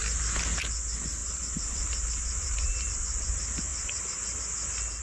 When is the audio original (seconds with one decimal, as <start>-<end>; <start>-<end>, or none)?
0.0-1.2; 2.9-3.7; 4.4-5.0